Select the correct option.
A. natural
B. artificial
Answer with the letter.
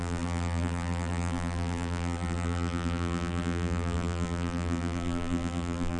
B